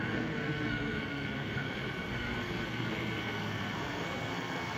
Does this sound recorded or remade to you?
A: remade